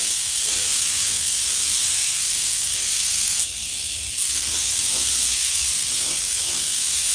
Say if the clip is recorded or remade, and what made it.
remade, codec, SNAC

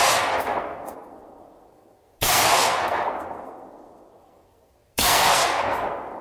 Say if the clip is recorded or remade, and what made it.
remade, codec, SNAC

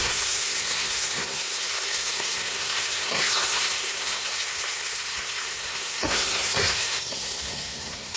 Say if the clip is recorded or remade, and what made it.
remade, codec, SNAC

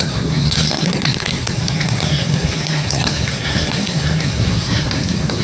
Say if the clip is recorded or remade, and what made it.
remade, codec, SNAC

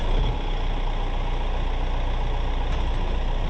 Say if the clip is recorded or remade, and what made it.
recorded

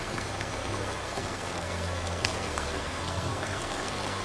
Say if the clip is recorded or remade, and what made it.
remade, codec, SNAC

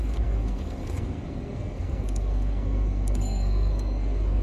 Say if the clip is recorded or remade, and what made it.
remade, codec, SNAC